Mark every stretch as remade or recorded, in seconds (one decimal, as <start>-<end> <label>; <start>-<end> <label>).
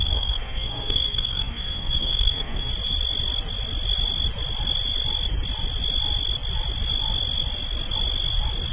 0.0-2.7 remade; 2.7-8.7 recorded